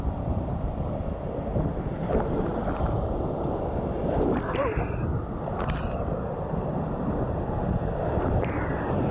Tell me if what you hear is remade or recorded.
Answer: recorded